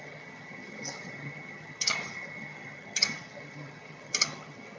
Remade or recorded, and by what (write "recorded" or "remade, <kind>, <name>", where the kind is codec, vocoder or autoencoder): remade, vocoder, HiFi-GAN